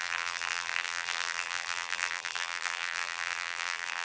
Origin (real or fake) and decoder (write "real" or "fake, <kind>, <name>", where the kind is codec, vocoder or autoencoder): fake, vocoder, BigVGAN v2